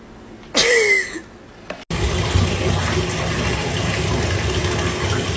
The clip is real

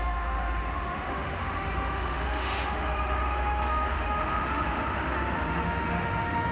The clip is fake